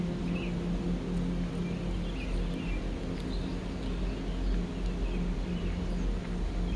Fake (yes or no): no